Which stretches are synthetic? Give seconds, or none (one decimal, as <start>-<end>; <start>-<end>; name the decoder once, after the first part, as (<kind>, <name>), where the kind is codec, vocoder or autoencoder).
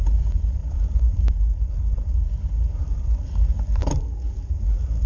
0.6-1.3 (vocoder, BigVGAN v2); 2.7-3.3